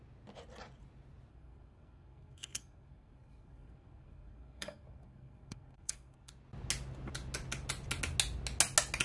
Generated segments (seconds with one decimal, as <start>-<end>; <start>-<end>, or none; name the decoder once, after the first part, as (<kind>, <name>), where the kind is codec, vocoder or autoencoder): 1.3-6.3 (codec, SNAC)